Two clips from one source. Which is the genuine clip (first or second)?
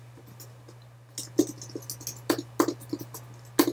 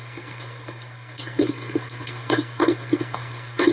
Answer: first